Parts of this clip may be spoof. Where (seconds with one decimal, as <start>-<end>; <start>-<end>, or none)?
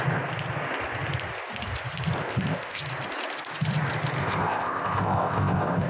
2.2-2.8; 4.2-5.9